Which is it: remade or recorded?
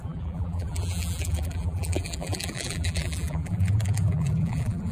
remade